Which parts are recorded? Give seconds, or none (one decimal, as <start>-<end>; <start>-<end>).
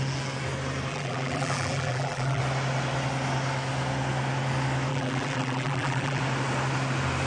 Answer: 0.0-0.9; 2.4-4.9; 6.2-7.3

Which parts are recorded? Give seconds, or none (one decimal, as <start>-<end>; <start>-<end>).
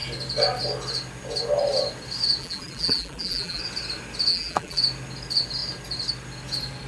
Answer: 0.0-2.4; 3.6-4.3; 4.8-6.9